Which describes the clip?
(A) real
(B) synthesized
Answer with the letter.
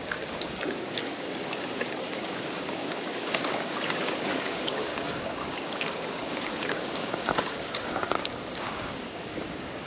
B